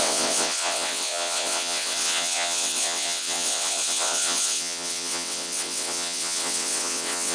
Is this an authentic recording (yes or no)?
no